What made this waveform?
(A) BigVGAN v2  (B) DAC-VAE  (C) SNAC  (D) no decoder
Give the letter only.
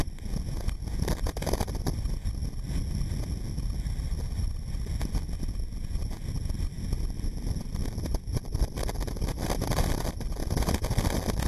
D